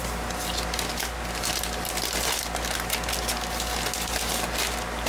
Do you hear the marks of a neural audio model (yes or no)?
no